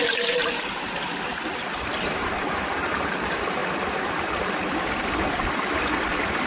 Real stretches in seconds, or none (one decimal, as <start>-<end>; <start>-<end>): 0.0-0.4; 2.3-6.5